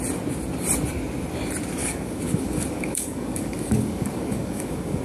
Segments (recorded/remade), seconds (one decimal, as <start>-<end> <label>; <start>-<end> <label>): 0.0-1.8 recorded; 1.8-5.0 remade